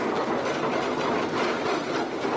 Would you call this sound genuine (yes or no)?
yes